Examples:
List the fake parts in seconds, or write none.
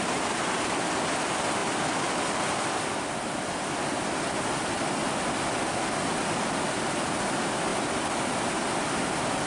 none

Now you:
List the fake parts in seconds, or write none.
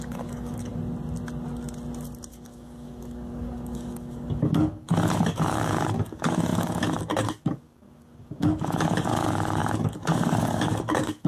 0.0-0.7 (codec, DAC); 2.3-11.3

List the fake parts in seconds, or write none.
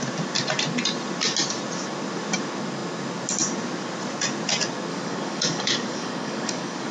4.9-6.9 (codec, DAC)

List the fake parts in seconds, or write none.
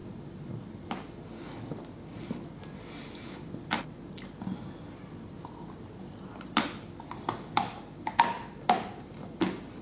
none